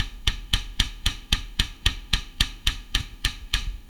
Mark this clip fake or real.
fake